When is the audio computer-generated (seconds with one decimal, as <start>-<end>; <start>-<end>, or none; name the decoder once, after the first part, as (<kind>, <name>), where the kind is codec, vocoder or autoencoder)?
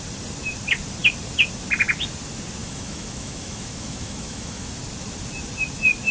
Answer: 2.6-4.7 (autoencoder, DAC-VAE)